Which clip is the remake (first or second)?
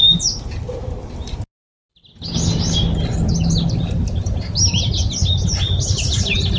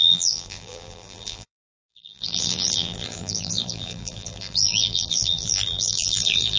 second